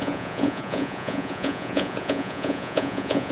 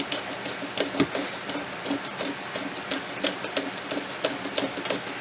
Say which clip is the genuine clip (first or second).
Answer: second